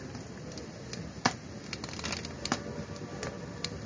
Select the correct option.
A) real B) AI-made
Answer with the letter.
A